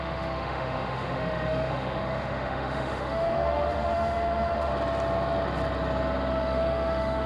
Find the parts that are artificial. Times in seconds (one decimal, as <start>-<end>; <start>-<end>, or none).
0.0-4.7; 6.3-7.3